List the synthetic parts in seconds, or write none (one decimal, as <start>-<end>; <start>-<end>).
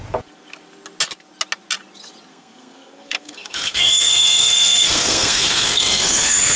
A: 2.3-6.6